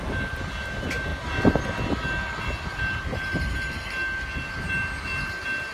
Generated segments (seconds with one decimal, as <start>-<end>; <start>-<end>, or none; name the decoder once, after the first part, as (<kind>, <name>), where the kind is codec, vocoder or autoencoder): none